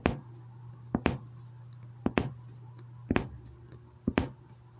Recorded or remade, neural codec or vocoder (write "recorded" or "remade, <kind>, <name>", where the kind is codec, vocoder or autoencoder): recorded